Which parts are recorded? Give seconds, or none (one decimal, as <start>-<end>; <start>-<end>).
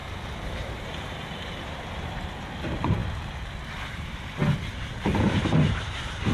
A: 3.0-3.9; 4.4-5.2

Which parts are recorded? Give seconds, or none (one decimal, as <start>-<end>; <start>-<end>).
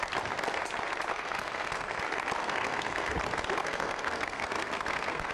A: 0.0-1.1; 2.0-2.4; 3.1-3.6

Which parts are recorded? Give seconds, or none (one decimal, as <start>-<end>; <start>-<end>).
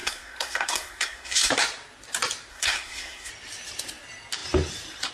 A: 1.5-2.5; 3.3-5.1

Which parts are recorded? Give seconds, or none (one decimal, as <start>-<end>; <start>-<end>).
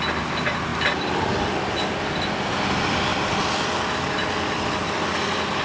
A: 0.0-5.6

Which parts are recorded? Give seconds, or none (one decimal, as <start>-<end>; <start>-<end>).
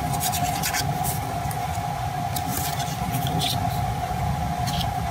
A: 0.0-5.1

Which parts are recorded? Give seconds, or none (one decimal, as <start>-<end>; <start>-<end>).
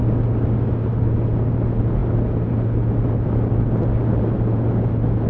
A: 0.0-5.3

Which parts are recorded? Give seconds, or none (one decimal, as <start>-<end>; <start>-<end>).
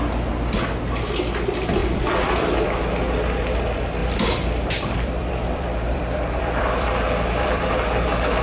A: 0.0-1.8; 2.6-4.0; 7.7-8.4